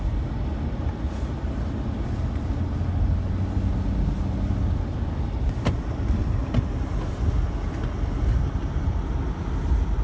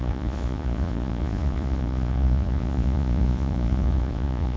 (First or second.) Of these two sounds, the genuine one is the first